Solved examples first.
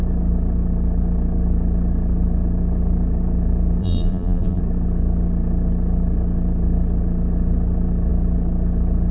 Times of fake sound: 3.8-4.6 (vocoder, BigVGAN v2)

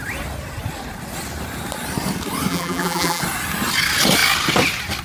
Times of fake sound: 2.5-3.2 (vocoder, BigVGAN v2)

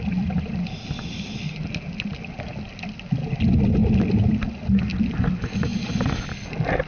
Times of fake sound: none

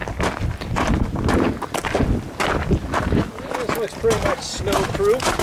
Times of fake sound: 1.8-3.2 (vocoder, BigVGAN v2)